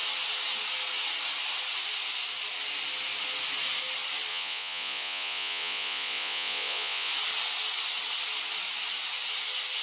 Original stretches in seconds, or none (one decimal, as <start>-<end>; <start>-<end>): 0.0-4.3; 7.1-9.8